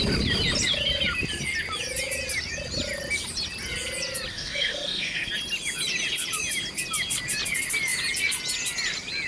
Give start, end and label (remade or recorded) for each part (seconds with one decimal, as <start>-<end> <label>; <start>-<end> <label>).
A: 0.0-4.3 recorded; 4.3-5.3 remade; 5.3-9.3 recorded